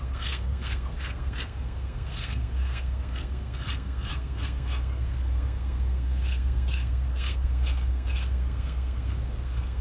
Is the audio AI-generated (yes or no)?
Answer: yes